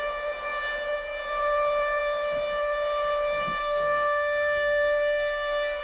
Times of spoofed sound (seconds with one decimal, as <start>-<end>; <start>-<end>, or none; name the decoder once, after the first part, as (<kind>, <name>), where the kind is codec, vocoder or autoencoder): 3.6-5.8 (codec, SNAC)